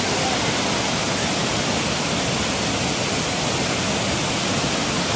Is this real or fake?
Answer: fake